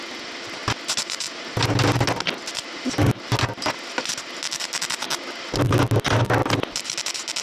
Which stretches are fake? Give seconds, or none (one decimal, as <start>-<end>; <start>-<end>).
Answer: none